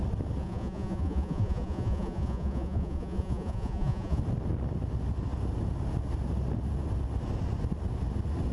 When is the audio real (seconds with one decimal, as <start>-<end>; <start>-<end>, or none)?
0.0-0.4; 4.2-8.5